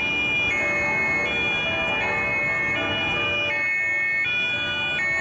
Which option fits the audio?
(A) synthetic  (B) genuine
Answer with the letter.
B